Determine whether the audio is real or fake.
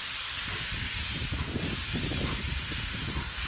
fake